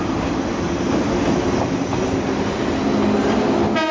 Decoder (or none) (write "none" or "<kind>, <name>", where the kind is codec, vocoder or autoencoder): none